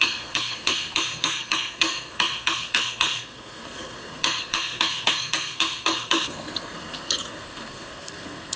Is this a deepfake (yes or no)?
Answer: yes